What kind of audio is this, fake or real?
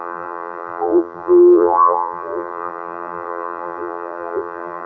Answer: fake